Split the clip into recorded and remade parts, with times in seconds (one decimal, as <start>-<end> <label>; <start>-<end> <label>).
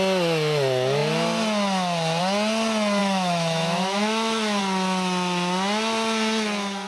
0.0-3.0 recorded; 3.0-4.6 remade; 4.6-6.9 recorded